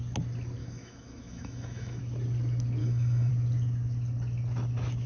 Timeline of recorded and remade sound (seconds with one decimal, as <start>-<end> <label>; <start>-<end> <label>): 0.0-0.6 recorded; 0.6-2.0 remade; 2.0-2.8 recorded; 2.8-3.3 remade; 3.3-5.1 recorded